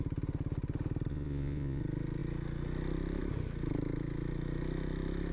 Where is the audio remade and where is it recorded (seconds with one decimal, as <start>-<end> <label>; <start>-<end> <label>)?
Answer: 0.0-1.1 recorded; 1.1-1.8 remade; 1.8-5.3 recorded